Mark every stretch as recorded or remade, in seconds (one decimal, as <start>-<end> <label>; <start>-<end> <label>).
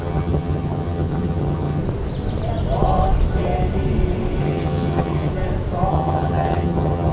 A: 0.0-1.8 remade; 1.8-4.4 recorded; 4.4-5.3 remade; 5.3-5.9 recorded; 5.9-7.1 remade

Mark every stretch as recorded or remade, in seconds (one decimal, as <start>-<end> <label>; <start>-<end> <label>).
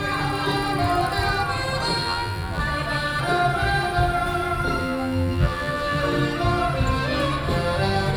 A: 0.0-2.0 recorded; 2.0-2.6 remade; 2.6-4.8 recorded; 4.8-6.0 remade; 6.0-8.2 recorded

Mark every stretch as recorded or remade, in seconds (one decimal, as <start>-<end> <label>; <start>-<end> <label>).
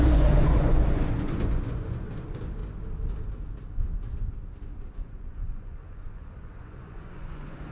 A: 0.0-2.6 remade; 2.6-4.9 recorded; 4.9-7.7 remade